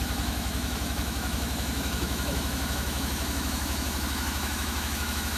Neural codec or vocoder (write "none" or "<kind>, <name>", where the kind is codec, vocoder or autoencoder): autoencoder, DAC-VAE